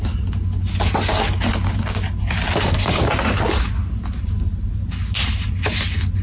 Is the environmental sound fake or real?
real